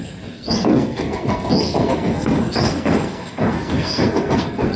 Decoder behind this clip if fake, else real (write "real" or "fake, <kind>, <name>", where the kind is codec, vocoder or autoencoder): fake, codec, SNAC